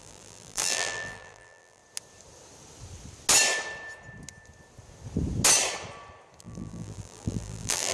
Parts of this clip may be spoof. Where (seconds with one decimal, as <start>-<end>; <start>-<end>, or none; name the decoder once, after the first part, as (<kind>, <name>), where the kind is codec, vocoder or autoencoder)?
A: 0.0-1.8 (vocoder, BigVGAN v2); 6.4-7.9